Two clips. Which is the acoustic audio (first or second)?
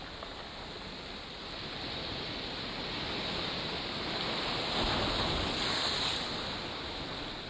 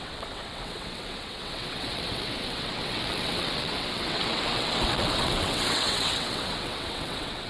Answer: first